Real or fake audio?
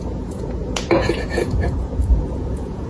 fake